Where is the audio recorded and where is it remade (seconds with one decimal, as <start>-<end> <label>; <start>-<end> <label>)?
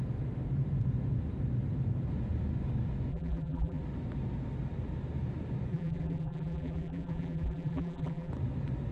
0.0-3.1 recorded; 3.1-3.8 remade; 3.8-5.7 recorded; 5.7-8.3 remade; 8.3-8.9 recorded